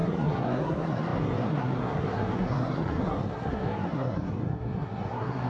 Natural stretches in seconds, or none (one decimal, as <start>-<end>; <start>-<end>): none